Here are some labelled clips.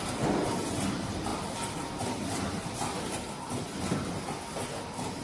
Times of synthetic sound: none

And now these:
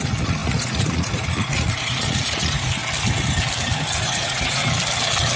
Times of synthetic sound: 0.0-2.8 (vocoder, Vocos); 4.0-4.6

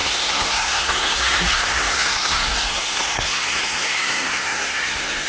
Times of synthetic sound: 0.0-5.3 (codec, SNAC)

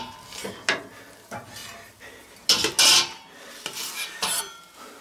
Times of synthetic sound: none

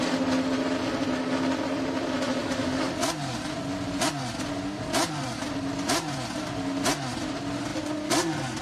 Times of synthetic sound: 2.4-2.9 (codec, DAC)

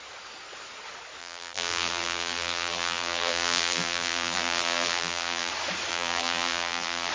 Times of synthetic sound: 1.2-5.5 (vocoder, BigVGAN v2); 5.9-7.1

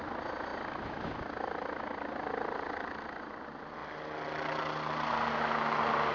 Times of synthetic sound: none